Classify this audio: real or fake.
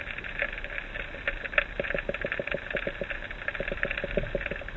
real